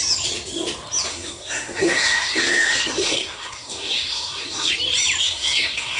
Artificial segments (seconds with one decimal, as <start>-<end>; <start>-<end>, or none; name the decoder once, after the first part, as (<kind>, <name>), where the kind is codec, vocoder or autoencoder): 1.1-4.7 (codec, SNAC); 5.2-6.0